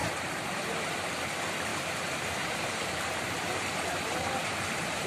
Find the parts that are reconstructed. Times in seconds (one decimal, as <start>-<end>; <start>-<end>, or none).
0.0-0.9; 1.7-5.1